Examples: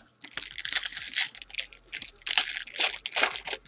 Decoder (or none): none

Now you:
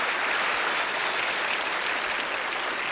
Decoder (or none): none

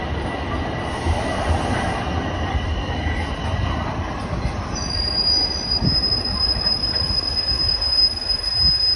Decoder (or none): none